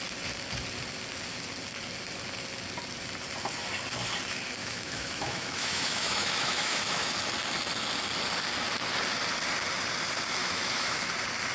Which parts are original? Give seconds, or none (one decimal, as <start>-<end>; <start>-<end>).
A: 0.0-4.6; 7.1-10.4; 11.1-11.5